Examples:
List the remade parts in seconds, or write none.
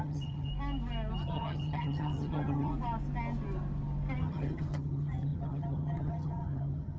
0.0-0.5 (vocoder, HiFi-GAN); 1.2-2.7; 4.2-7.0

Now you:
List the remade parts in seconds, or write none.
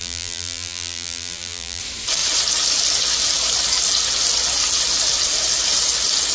0.0-1.8 (vocoder, BigVGAN v2)